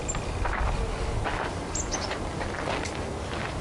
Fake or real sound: real